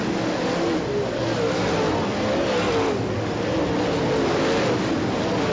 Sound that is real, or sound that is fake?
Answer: real